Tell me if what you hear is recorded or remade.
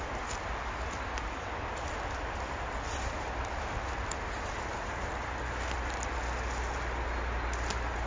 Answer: recorded